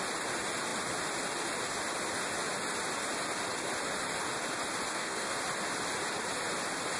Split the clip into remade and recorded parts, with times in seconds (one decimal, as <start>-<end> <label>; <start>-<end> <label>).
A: 0.0-4.9 recorded; 4.9-5.4 remade; 5.4-7.0 recorded